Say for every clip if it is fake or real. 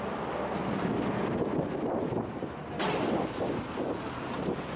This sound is real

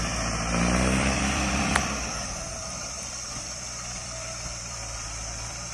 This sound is fake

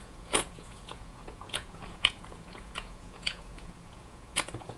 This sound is fake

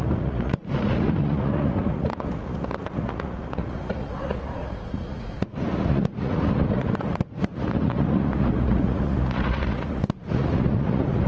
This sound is fake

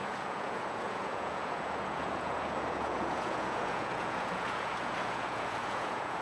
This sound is fake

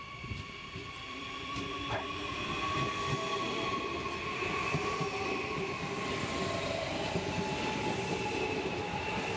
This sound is fake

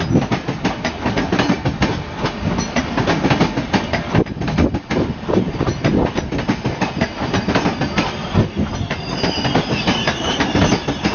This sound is real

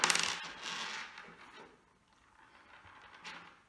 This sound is real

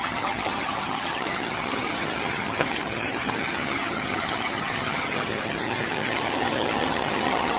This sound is fake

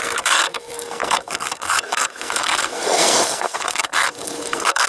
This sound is fake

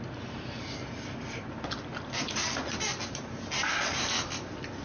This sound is real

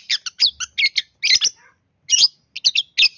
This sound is real